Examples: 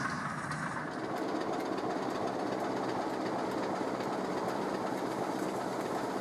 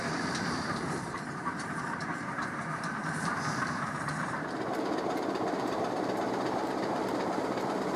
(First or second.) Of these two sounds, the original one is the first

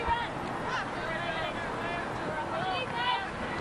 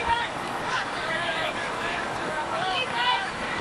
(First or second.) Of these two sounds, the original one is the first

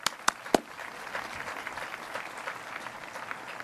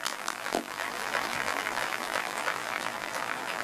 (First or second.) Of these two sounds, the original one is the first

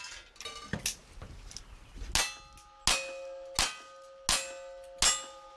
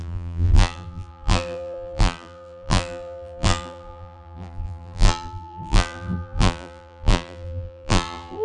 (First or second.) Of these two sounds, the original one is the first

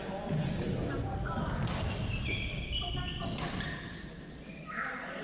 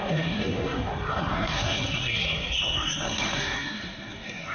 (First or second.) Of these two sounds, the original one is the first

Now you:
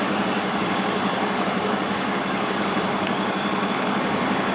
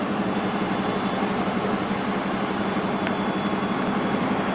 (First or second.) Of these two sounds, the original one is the second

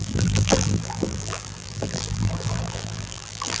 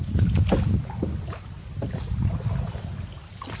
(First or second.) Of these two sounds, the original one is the second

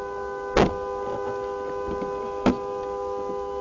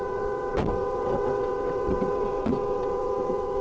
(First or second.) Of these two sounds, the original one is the first